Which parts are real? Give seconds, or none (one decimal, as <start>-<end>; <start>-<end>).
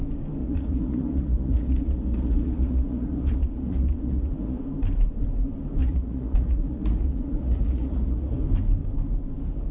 0.0-0.4; 4.6-5.8; 8.4-9.7